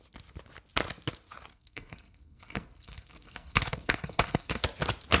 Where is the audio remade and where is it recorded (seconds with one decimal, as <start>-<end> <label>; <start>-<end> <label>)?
0.0-1.5 recorded; 1.5-4.6 remade; 4.6-5.2 recorded